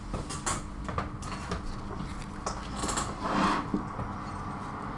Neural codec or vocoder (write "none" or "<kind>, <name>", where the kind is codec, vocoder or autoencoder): none